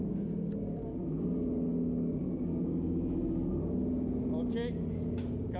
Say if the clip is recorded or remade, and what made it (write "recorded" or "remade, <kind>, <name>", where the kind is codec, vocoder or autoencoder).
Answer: recorded